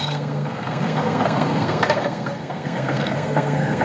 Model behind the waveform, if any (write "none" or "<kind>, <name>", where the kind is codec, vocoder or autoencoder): codec, SNAC